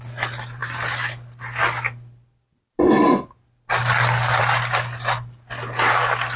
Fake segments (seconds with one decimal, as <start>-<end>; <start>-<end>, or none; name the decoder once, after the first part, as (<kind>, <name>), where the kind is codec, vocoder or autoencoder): none